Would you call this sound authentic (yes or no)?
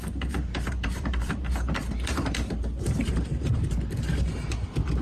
no